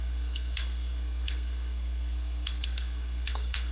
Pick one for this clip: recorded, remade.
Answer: remade